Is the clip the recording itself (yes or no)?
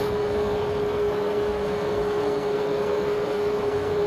no